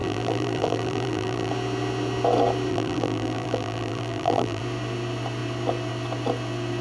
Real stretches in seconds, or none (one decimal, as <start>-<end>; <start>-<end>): 1.5-2.7; 4.6-6.8